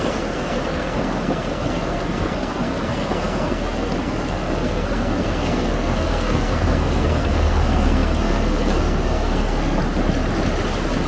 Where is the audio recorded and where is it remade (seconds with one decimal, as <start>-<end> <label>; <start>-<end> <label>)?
0.0-9.8 remade; 9.8-11.1 recorded